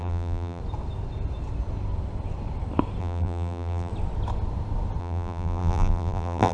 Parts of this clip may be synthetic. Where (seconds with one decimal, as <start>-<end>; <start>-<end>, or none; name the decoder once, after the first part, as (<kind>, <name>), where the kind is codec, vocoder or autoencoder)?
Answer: 0.0-0.6 (vocoder, BigVGAN v2); 3.0-3.9; 5.0-6.5